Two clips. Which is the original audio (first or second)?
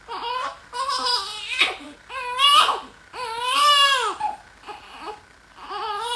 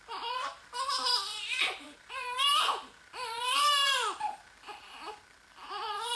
first